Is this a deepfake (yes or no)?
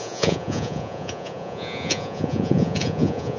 yes